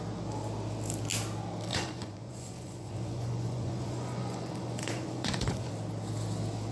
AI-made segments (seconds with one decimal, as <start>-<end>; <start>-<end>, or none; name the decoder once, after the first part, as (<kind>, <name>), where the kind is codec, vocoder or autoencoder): 1.7-5.7 (vocoder, Vocos)